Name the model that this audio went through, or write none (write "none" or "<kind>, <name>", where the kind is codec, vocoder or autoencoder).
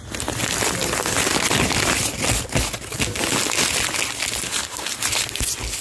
none